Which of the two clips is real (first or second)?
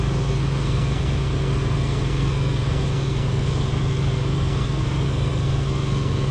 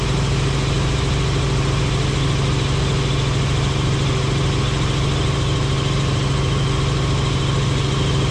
second